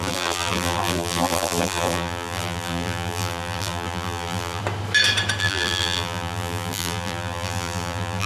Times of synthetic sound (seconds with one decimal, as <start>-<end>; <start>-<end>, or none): 0.0-4.6; 5.4-8.3